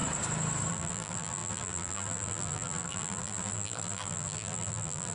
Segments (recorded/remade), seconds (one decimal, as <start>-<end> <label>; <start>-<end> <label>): 0.0-0.7 recorded; 0.7-5.1 remade